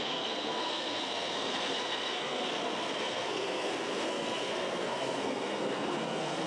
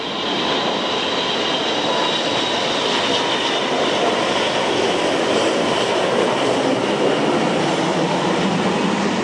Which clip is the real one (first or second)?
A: second